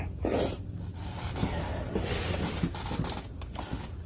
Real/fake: real